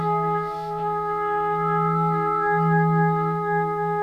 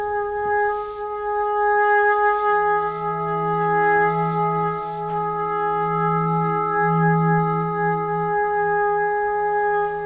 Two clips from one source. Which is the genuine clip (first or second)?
second